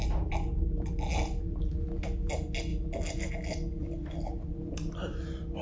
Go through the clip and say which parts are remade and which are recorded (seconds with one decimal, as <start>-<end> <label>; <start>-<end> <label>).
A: 0.0-5.6 recorded